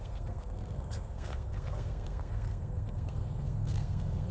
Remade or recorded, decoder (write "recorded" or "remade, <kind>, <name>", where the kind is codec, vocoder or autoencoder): remade, codec, SNAC